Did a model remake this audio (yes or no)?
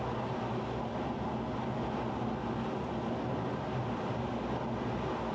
no